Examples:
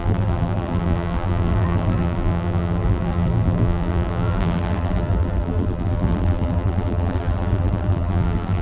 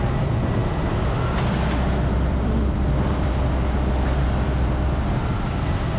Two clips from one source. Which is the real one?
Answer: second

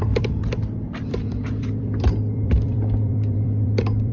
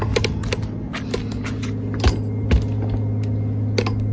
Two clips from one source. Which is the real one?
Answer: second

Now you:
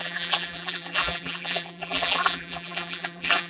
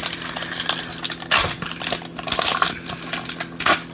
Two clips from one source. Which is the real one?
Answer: second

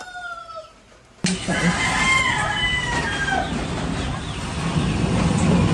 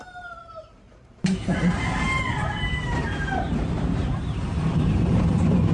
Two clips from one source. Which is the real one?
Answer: first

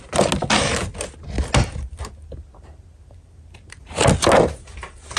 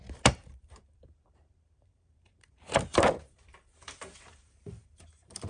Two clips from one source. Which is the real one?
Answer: first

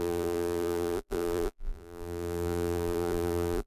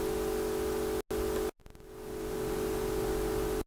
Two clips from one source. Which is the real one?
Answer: second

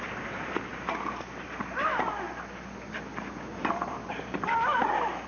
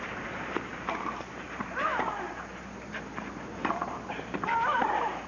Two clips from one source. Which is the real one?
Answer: first